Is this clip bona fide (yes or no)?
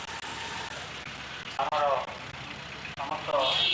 yes